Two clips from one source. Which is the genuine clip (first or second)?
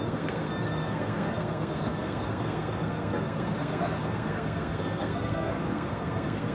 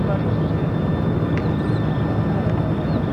second